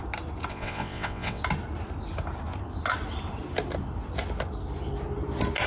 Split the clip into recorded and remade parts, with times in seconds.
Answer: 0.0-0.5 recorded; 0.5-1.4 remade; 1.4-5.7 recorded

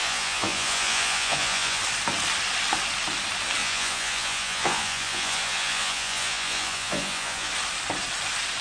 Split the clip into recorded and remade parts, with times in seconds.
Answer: 0.0-1.8 remade; 1.8-3.6 recorded; 3.6-7.5 remade; 7.5-8.6 recorded

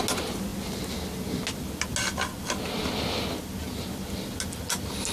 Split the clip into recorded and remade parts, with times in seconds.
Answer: 0.0-5.1 recorded

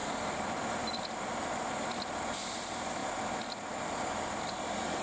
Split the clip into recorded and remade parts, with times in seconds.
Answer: 0.0-5.0 recorded

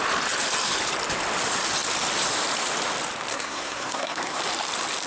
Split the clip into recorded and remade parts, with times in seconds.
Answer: 0.0-3.3 recorded; 3.3-4.4 remade; 4.4-5.1 recorded

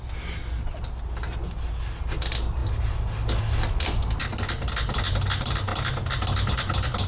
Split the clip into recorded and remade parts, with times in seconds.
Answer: 0.0-7.1 recorded